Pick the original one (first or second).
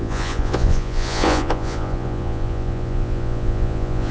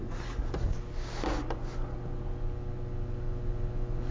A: second